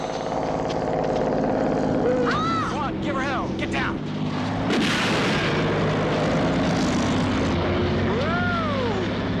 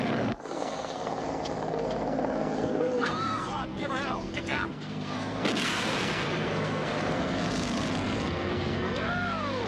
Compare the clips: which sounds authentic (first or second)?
first